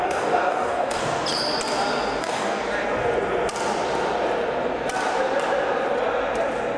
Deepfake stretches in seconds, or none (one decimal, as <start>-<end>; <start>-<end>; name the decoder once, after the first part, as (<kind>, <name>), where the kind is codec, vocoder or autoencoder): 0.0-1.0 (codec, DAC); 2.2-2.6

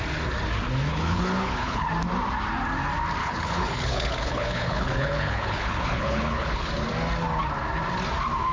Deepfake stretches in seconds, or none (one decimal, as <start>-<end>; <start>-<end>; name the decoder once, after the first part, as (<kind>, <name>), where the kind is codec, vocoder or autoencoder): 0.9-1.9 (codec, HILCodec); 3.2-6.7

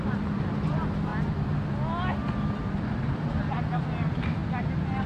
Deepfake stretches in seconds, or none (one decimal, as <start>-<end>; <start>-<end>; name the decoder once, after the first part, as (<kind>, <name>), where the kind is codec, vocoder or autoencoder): 0.0-1.1 (vocoder, BigVGAN v2); 2.6-4.4